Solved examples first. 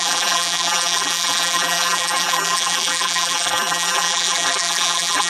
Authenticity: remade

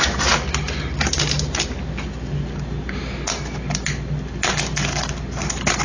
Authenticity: recorded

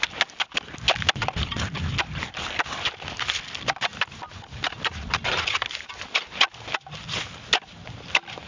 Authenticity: recorded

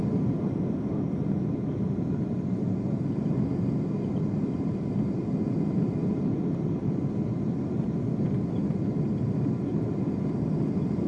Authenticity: recorded